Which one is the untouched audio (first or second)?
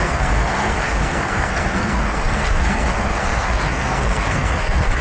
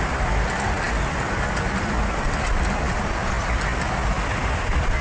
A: second